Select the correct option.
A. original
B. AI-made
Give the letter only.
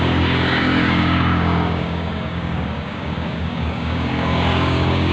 B